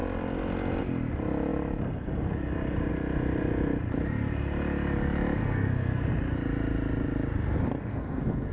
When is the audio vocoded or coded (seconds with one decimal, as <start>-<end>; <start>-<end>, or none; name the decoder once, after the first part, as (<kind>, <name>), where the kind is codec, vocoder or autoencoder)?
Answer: 5.4-6.0 (codec, SNAC); 7.9-8.5